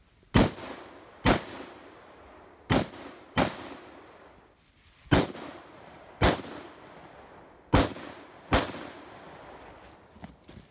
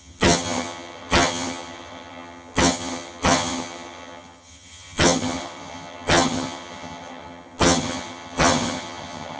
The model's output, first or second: second